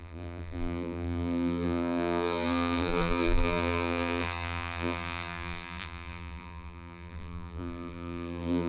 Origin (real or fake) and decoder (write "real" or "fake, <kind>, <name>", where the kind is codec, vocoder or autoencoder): fake, vocoder, BigVGAN v2